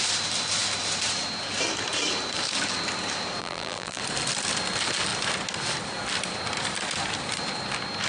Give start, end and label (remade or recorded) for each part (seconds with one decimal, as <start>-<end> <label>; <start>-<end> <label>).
0.0-3.4 recorded; 3.4-4.0 remade; 4.0-8.1 recorded